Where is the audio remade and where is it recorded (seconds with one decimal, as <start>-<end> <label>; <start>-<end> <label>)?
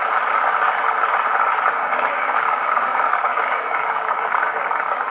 0.0-1.8 recorded; 1.8-5.1 remade